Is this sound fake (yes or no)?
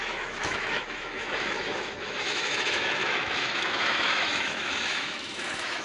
yes